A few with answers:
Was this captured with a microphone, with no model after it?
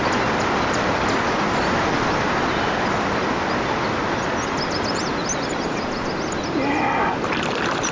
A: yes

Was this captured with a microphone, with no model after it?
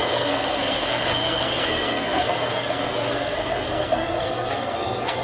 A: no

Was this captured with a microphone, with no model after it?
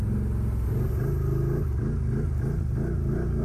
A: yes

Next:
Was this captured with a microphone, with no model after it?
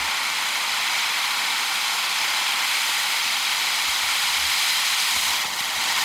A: no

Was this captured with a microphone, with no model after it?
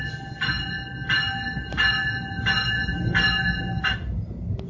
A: yes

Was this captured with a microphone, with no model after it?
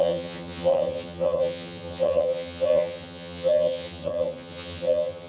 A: no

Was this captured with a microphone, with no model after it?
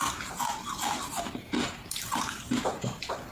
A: no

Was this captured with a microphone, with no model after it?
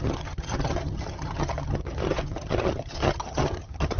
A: no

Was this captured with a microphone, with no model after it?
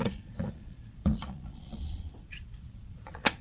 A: no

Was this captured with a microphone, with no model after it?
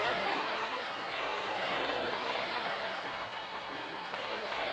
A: no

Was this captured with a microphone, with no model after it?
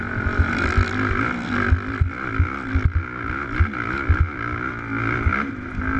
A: yes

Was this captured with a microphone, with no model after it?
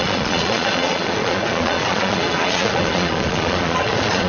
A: no